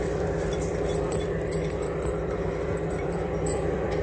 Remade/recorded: remade